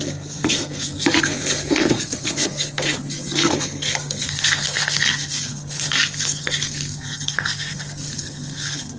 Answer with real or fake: fake